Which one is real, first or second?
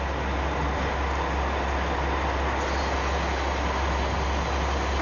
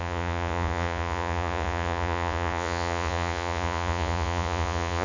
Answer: first